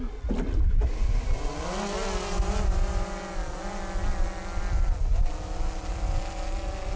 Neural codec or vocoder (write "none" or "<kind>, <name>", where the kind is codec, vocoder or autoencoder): none